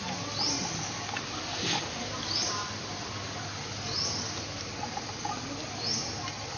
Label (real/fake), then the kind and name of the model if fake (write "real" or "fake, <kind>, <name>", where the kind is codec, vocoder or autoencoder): real